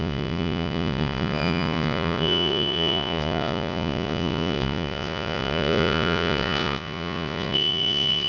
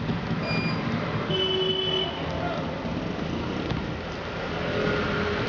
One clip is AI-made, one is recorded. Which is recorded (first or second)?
second